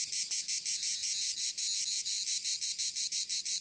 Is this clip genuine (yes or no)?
yes